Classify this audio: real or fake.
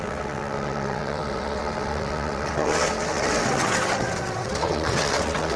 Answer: fake